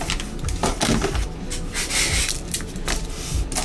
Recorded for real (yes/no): yes